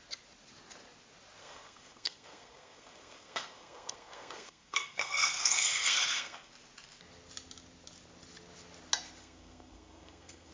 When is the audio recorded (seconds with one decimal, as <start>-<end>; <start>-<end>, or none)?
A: 0.0-1.4; 6.5-9.2